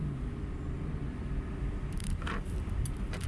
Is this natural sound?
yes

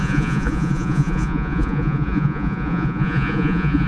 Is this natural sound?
no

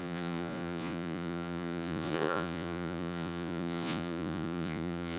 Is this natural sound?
no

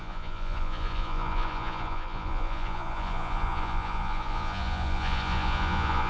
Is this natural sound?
no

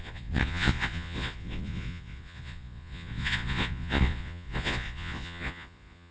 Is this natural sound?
no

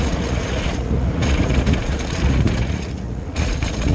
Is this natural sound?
no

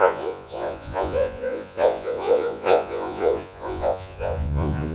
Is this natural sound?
no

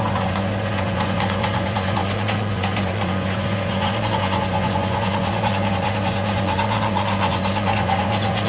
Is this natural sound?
no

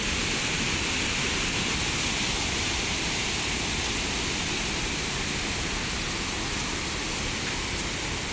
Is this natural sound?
yes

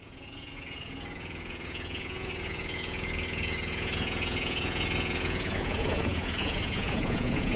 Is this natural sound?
no